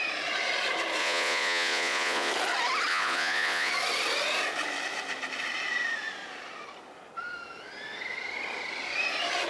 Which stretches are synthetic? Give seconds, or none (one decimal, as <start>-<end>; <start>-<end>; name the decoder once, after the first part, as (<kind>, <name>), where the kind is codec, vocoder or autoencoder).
1.0-2.3 (vocoder, Vocos); 2.9-3.7